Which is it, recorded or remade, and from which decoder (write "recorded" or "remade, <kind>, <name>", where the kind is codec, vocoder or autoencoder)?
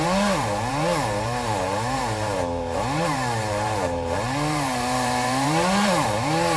remade, vocoder, BigVGAN v2